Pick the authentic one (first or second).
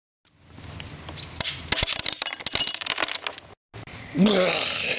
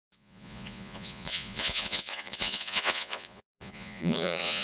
first